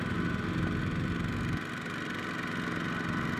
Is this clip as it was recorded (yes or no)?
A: yes